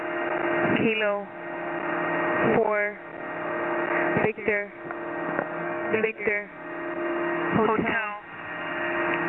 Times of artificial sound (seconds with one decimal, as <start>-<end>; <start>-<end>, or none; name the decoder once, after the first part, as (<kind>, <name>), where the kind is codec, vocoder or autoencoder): 5.6-6.2 (codec, SNAC)